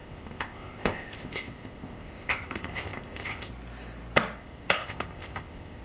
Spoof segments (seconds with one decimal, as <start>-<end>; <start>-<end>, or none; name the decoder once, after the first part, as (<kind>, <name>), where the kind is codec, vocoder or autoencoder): 0.0-3.5 (codec, ZipCodec); 4.4-5.8